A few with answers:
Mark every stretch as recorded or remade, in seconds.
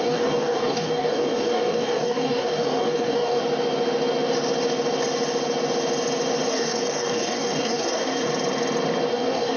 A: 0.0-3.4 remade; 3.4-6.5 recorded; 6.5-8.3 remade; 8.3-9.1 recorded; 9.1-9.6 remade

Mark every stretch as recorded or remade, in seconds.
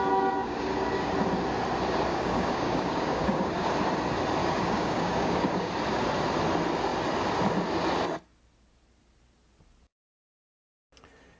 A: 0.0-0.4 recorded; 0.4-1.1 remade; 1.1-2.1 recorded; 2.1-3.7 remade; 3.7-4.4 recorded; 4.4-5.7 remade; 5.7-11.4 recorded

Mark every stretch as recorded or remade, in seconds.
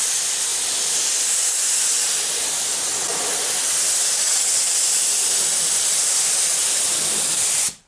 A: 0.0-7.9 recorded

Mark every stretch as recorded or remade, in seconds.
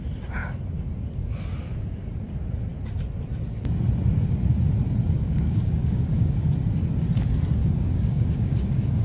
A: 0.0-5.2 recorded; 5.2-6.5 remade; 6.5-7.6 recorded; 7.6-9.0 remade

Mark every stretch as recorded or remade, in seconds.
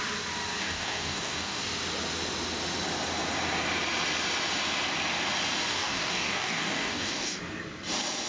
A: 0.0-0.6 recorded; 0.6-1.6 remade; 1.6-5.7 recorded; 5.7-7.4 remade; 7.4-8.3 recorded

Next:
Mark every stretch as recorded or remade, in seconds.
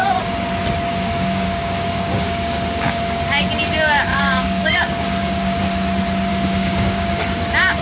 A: 0.0-0.5 remade; 0.5-0.9 recorded; 0.9-3.2 remade; 3.2-4.1 recorded; 4.1-5.6 remade; 5.6-6.3 recorded; 6.3-7.2 remade; 7.2-7.8 recorded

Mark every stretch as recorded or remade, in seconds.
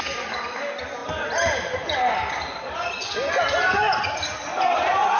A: 0.0-5.2 recorded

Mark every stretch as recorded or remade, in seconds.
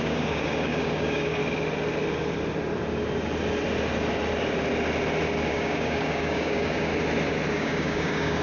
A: 0.0-1.4 remade; 1.4-5.5 recorded; 5.5-6.9 remade; 6.9-7.5 recorded; 7.5-8.4 remade